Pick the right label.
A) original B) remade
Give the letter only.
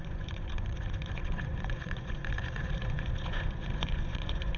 B